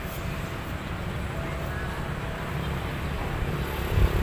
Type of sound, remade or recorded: recorded